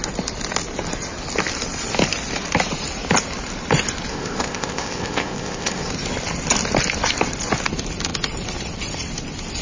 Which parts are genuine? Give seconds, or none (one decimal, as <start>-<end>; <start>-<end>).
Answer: 0.0-4.1; 5.9-9.6